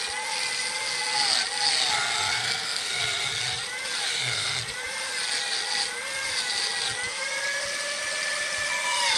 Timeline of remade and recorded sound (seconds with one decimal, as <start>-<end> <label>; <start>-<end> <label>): 0.0-2.4 recorded; 2.4-3.0 remade; 3.0-4.1 recorded; 4.1-4.6 remade; 4.6-9.2 recorded